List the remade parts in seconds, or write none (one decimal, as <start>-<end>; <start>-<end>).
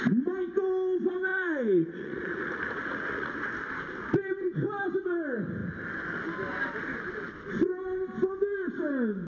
1.3-3.5